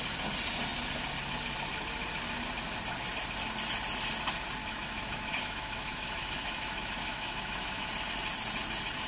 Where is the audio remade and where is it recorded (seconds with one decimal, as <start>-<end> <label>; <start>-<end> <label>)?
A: 0.0-4.6 recorded; 4.6-7.9 remade; 7.9-9.1 recorded